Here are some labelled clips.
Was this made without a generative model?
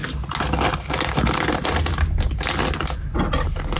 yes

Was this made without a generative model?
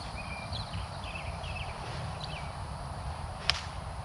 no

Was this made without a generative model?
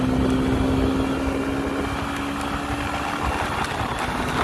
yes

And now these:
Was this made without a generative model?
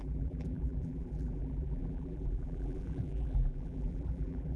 no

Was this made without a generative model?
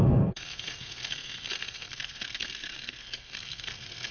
no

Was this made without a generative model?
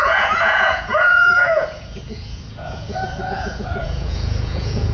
no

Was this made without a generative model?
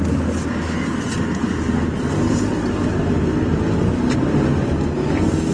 yes